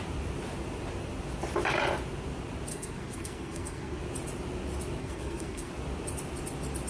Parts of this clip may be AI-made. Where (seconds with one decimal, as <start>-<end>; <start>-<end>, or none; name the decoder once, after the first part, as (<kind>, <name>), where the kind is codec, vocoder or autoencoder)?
2.7-4.0 (codec, SNAC); 5.0-5.7